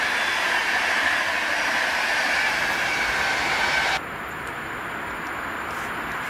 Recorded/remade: recorded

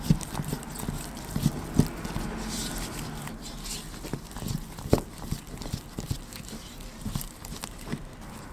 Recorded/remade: recorded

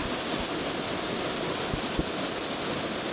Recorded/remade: recorded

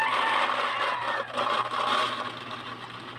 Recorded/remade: recorded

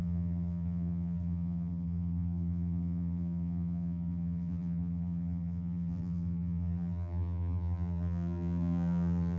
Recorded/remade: remade